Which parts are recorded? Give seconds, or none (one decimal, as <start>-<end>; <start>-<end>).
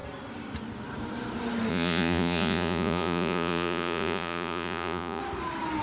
0.0-1.7; 5.2-5.8